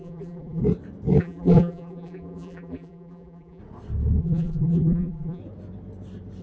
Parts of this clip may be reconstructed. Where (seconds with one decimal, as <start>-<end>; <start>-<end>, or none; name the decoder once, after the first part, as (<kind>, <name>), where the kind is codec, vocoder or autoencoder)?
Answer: 0.0-0.6 (vocoder, BigVGAN v2); 1.2-3.6; 4.2-5.4